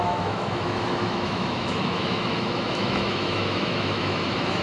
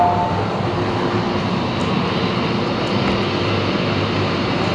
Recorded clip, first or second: second